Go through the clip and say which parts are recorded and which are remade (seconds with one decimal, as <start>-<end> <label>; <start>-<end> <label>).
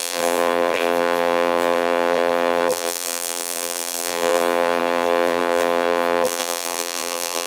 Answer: 0.0-7.5 remade